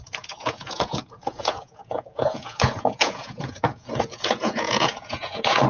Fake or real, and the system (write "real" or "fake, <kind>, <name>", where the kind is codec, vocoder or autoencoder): fake, vocoder, Vocos